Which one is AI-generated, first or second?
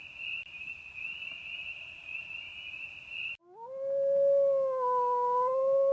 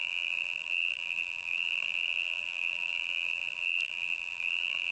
second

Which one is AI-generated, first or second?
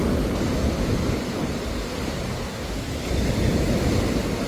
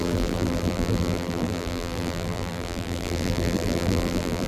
second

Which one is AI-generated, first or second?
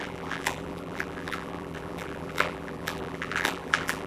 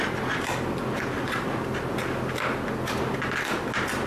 first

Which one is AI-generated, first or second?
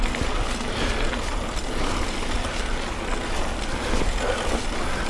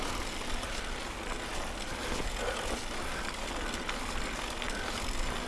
first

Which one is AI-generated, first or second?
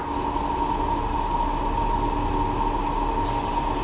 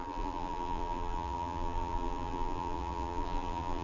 second